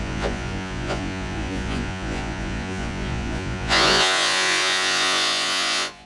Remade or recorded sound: remade